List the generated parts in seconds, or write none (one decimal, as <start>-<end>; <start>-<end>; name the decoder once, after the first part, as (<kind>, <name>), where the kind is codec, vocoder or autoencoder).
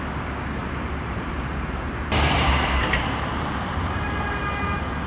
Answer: 0.6-3.7 (vocoder, BigVGAN v2)